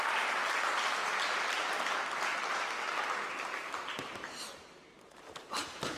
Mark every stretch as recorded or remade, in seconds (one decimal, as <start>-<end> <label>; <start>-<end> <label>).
0.0-0.4 remade; 0.4-4.0 recorded; 4.0-6.0 remade

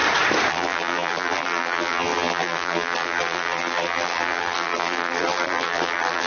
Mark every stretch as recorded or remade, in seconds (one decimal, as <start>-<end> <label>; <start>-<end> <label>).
0.0-0.5 recorded; 0.5-6.3 remade

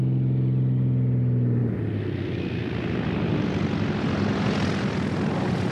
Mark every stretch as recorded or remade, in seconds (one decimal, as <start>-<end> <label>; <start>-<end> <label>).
0.0-5.7 recorded

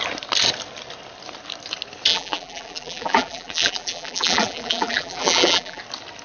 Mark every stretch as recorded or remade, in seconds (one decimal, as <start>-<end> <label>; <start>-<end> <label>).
0.0-2.1 recorded; 2.1-5.8 remade; 5.8-6.2 recorded

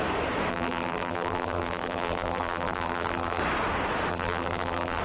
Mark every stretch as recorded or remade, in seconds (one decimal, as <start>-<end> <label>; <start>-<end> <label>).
0.0-0.5 recorded; 0.5-3.4 remade; 3.4-4.1 recorded; 4.1-5.0 remade

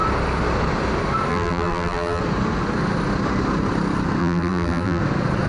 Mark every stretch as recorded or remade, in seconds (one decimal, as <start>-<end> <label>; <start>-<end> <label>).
0.0-1.3 recorded; 1.3-2.2 remade; 2.2-4.2 recorded; 4.2-5.0 remade; 5.0-5.5 recorded

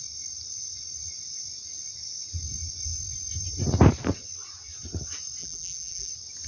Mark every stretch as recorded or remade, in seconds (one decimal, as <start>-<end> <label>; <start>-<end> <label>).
0.0-5.4 recorded; 5.4-6.1 remade; 6.1-6.5 recorded